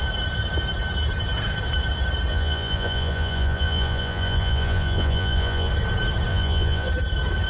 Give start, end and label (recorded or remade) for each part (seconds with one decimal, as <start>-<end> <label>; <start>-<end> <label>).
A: 0.0-2.3 recorded; 2.3-5.7 remade; 5.7-6.3 recorded; 6.3-6.9 remade; 6.9-7.5 recorded